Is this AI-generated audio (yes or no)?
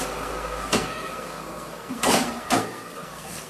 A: yes